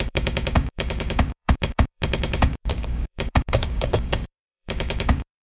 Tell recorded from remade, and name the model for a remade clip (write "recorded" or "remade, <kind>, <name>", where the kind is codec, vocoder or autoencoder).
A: remade, codec, DAC